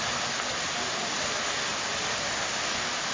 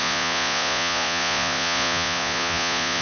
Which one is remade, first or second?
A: second